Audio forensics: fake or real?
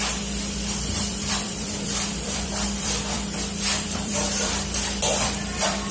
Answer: fake